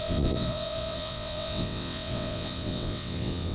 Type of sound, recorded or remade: remade